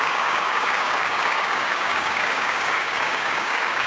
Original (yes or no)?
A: no